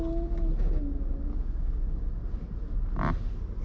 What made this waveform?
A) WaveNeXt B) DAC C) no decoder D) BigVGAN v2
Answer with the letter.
C